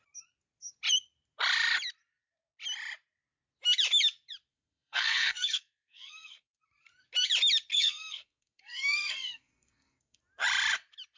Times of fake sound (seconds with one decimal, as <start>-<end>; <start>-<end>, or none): 4.5-6.6; 7.7-10.2